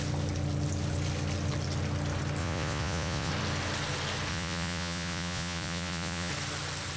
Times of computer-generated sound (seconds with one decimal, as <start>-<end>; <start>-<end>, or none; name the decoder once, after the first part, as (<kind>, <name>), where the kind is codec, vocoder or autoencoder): 2.4-3.3 (vocoder, Vocos); 4.3-6.3